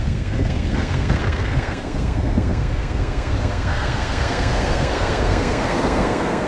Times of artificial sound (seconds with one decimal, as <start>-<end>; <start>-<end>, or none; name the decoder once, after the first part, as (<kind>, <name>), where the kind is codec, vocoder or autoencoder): 0.0-6.5 (codec, SNAC)